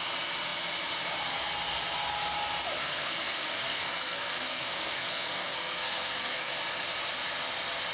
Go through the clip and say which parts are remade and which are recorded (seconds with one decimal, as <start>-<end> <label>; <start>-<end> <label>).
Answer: 0.0-2.8 recorded; 2.8-6.5 remade; 6.5-7.9 recorded